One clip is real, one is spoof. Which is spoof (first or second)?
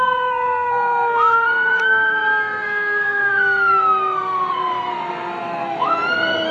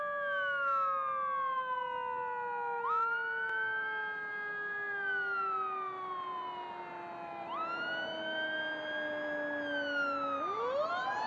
first